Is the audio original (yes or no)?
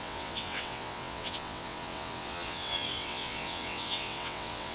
no